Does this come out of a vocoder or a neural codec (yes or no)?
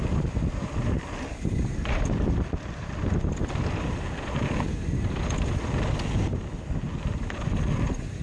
no